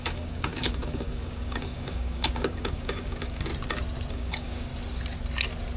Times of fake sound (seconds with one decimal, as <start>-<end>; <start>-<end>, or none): 0.0-3.5; 4.1-4.7